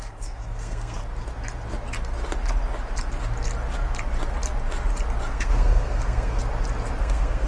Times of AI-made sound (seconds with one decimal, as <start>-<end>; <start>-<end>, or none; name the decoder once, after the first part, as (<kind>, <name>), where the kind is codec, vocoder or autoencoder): 0.0-1.0 (codec, SNAC); 5.3-6.4; 7.0-7.5